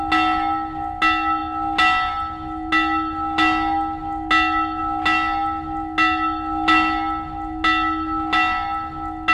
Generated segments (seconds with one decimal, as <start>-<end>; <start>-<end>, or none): none